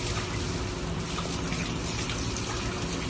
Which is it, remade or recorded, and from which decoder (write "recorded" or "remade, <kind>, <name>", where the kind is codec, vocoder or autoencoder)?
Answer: recorded